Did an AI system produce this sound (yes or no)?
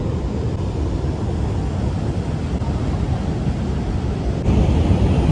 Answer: no